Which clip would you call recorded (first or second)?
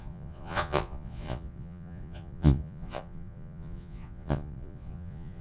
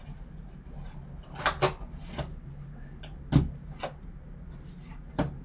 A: second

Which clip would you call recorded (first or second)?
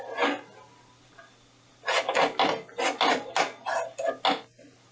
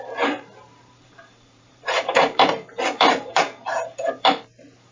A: first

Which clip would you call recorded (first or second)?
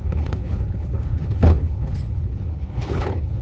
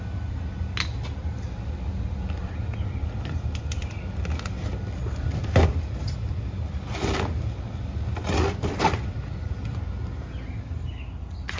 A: second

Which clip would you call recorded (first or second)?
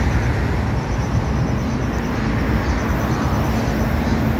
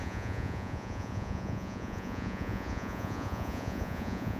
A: first